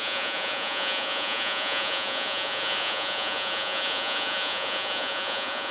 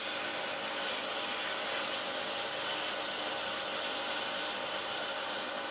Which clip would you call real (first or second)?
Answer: second